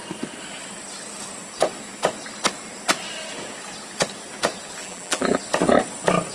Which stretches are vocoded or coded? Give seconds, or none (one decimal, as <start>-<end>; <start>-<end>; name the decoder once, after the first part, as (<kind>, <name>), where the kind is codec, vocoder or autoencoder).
4.8-5.4 (vocoder, BigVGAN v2)